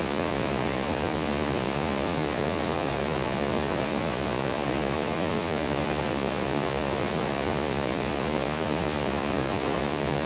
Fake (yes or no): yes